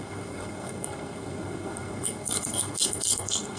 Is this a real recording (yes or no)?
no